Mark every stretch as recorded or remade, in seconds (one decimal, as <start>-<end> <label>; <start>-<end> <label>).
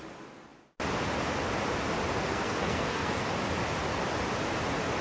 0.0-2.3 recorded; 2.3-3.2 remade; 3.2-5.0 recorded